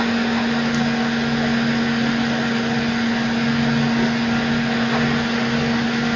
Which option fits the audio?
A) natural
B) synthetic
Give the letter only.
A